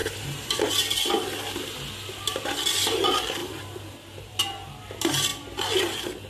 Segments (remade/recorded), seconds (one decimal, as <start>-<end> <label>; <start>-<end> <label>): 0.0-0.7 remade; 0.7-6.3 recorded